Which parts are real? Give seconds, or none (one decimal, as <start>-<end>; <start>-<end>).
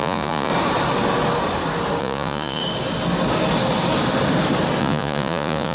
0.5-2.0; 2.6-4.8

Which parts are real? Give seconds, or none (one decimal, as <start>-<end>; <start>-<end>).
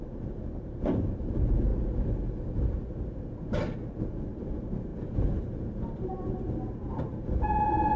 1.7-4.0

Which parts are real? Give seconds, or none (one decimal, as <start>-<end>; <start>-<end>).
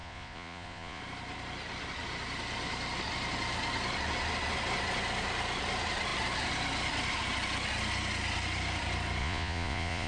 1.0-9.2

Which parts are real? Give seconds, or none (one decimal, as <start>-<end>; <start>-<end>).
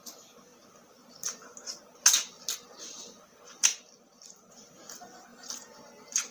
0.0-5.3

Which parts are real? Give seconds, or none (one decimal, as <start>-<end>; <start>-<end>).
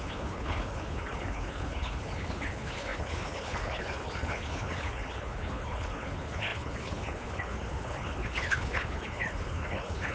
none